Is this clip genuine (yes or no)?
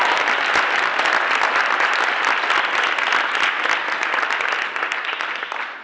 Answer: yes